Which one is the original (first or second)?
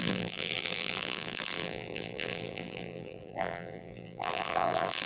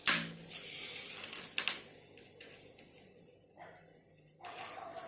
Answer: second